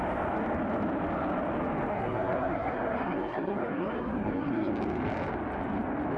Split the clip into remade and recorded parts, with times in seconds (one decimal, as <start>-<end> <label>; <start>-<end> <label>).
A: 0.0-1.9 recorded; 1.9-4.7 remade; 4.7-6.2 recorded